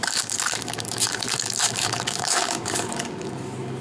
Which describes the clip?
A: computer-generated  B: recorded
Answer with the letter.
A